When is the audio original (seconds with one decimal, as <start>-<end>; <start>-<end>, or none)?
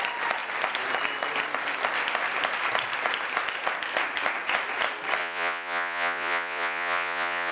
0.0-5.2